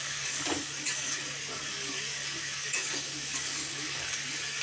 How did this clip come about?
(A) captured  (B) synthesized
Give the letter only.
B